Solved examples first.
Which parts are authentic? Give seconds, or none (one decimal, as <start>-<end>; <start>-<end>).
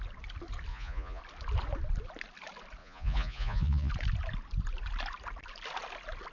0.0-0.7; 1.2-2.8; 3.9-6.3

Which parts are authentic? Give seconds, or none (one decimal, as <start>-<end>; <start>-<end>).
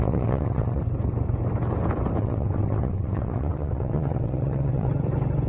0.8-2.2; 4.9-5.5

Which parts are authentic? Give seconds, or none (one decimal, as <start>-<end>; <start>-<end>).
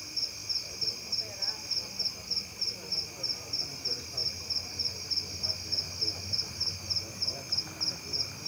0.0-8.5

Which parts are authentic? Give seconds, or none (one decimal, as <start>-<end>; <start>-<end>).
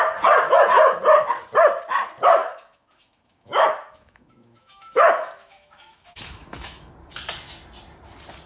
0.0-2.4; 6.9-8.5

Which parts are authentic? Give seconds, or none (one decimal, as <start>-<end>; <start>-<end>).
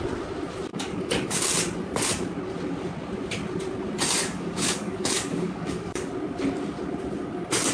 0.0-0.7; 1.4-4.2; 6.1-7.7